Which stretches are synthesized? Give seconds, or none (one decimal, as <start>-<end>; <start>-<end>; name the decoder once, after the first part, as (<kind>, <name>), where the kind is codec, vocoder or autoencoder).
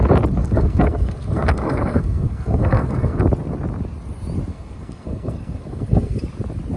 0.4-3.2 (codec, SNAC); 4.5-6.2